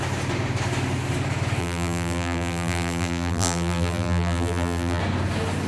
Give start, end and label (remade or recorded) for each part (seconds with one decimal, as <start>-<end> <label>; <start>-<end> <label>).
0.0-1.6 recorded; 1.6-5.0 remade; 5.0-5.7 recorded